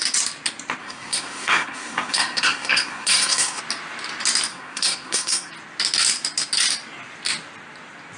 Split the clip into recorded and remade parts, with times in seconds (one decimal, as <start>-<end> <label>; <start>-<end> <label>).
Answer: 0.0-0.8 recorded; 0.8-3.6 remade; 3.6-4.5 recorded; 4.5-5.5 remade; 5.5-8.2 recorded

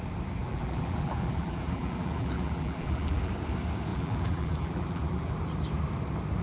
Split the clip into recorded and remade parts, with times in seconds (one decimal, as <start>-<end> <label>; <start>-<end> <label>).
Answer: 0.0-0.4 recorded; 0.4-3.3 remade; 3.3-3.9 recorded; 3.9-5.3 remade; 5.3-6.4 recorded

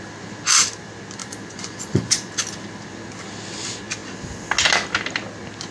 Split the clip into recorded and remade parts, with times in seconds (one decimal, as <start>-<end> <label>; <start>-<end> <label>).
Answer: 0.0-1.2 recorded; 1.2-2.3 remade; 2.3-5.7 recorded